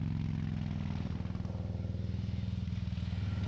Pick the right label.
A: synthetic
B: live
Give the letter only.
B